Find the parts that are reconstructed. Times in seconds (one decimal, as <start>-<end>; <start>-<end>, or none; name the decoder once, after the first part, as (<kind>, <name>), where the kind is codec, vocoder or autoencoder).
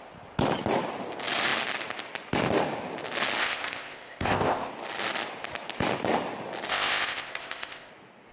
3.4-4.7 (codec, ZipCodec); 6.7-7.9